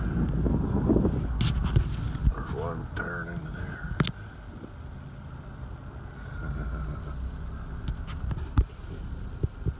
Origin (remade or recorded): recorded